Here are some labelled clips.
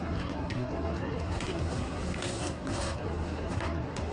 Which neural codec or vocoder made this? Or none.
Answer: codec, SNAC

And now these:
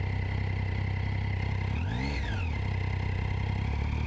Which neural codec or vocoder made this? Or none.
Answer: none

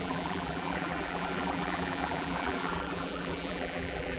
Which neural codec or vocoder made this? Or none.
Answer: vocoder, BigVGAN v2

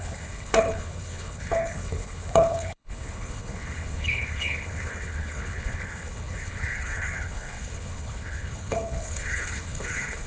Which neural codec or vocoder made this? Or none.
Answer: codec, HILCodec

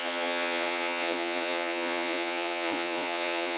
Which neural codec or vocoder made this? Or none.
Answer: vocoder, Vocos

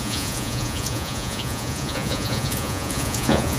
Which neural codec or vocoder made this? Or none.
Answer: vocoder, Vocos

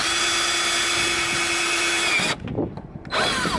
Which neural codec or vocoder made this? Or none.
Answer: none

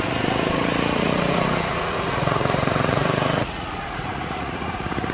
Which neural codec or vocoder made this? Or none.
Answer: vocoder, Vocos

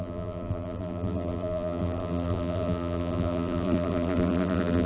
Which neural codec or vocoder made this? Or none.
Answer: vocoder, BigVGAN v2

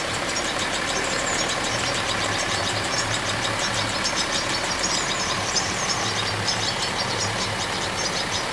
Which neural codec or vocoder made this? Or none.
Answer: vocoder, BigVGAN v2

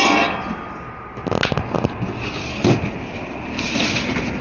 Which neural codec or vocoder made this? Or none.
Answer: none